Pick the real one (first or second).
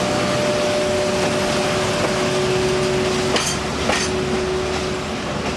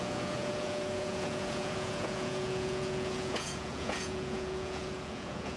first